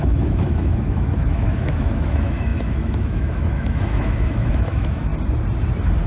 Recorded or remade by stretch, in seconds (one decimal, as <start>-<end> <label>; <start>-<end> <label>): 0.0-5.1 remade; 5.1-6.1 recorded